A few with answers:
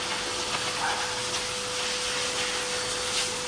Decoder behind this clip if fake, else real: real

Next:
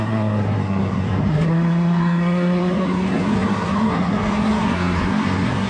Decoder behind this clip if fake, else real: fake, codec, SNAC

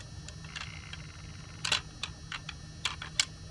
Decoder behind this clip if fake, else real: real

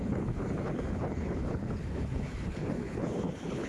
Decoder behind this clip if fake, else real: fake, codec, HILCodec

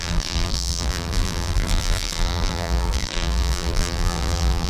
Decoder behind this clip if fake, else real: fake, vocoder, BigVGAN v2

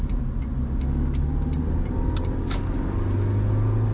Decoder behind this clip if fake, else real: real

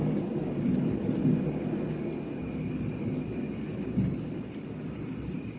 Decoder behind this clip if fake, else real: real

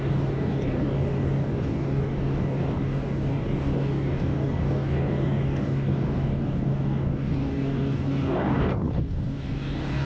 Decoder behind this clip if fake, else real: fake, codec, DAC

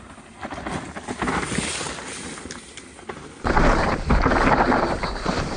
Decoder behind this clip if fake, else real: real